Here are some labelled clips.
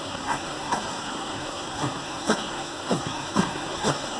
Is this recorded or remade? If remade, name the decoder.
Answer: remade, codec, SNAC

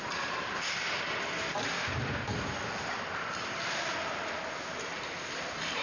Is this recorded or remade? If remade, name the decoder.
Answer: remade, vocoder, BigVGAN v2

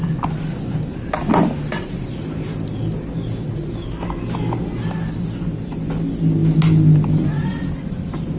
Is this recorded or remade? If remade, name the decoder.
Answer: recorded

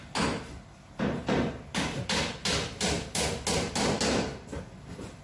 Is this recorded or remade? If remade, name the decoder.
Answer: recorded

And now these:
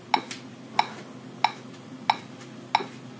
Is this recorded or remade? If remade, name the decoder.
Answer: recorded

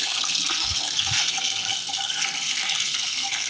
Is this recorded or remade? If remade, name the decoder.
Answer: remade, codec, SNAC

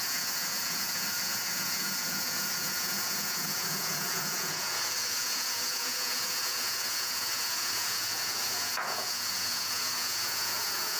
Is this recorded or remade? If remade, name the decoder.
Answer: remade, vocoder, Vocos